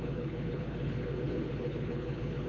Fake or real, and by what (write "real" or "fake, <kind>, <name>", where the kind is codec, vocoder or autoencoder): fake, codec, HILCodec